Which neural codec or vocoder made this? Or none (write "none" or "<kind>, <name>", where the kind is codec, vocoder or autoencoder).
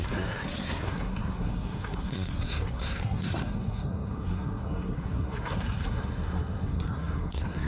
codec, SNAC